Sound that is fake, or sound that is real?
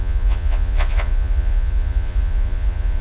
fake